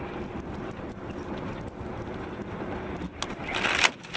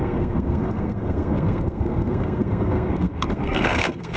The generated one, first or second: second